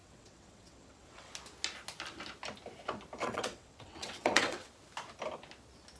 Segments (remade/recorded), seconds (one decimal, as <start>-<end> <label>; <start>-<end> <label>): 0.0-1.3 remade; 1.3-3.2 recorded; 3.2-4.7 remade; 4.7-6.0 recorded